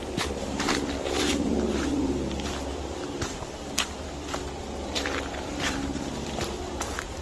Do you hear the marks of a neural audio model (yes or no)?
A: yes